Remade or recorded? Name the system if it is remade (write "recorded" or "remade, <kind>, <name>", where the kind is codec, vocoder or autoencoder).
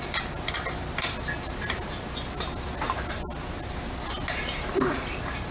recorded